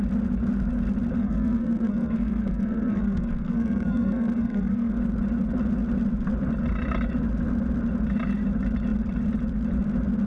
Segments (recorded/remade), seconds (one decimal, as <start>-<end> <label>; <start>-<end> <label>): 0.0-1.2 recorded; 1.2-4.9 remade; 4.9-10.3 recorded